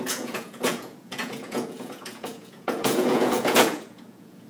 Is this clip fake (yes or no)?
yes